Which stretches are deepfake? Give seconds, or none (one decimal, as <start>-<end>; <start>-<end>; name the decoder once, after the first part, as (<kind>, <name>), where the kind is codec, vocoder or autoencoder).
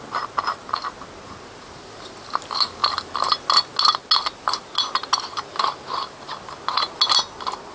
none